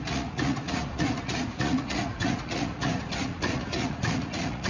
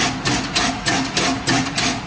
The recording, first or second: second